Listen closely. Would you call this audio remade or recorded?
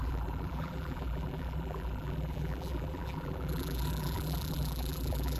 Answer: remade